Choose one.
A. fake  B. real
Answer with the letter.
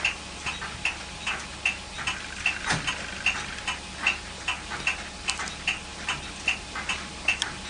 B